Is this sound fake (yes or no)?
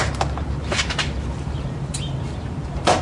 yes